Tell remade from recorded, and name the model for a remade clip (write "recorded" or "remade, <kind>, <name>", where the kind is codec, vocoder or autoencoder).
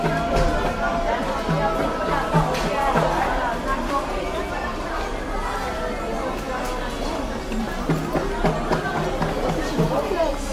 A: recorded